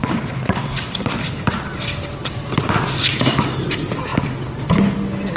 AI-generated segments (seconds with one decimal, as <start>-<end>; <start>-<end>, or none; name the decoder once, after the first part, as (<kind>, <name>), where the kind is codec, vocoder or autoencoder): 0.0-3.2 (vocoder, BigVGAN v2)